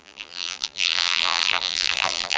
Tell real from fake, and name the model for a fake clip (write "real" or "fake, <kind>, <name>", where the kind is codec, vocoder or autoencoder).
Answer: fake, vocoder, BigVGAN v2